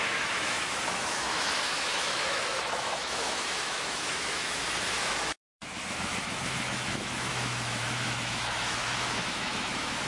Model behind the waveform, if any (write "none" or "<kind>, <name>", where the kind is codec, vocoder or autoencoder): autoencoder, DAC-VAE